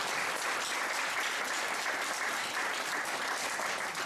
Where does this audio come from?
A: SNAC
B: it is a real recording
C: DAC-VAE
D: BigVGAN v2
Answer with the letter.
B